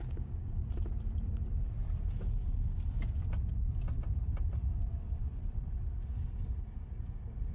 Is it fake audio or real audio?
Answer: fake